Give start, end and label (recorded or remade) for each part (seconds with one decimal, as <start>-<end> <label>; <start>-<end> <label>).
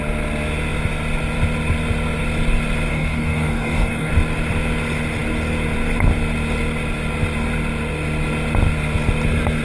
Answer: 0.0-2.9 recorded; 2.9-4.1 remade; 4.1-9.6 recorded